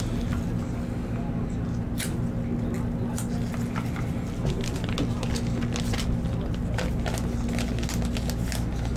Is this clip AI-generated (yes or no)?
no